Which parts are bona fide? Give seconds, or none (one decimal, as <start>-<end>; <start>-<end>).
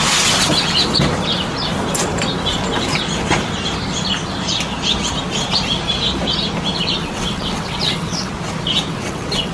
0.0-7.0; 8.3-8.9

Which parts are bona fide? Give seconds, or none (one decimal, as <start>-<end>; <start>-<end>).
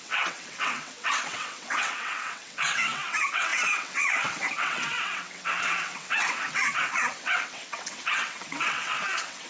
none